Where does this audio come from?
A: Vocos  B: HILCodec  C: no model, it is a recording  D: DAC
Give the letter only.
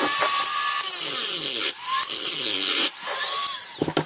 C